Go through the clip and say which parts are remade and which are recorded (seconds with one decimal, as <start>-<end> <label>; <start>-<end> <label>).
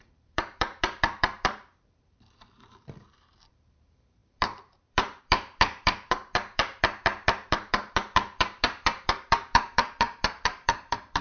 0.0-11.2 remade